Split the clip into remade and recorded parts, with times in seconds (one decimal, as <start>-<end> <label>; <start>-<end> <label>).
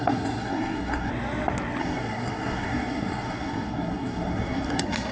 0.0-1.1 remade; 1.1-1.8 recorded; 1.8-5.1 remade